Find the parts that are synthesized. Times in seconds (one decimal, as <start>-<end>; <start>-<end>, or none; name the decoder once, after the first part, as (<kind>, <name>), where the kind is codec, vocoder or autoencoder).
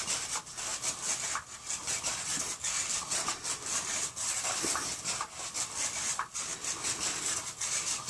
none